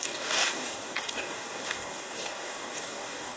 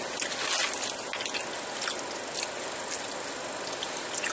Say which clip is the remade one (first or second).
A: first